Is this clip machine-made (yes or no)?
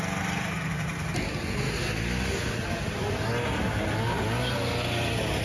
no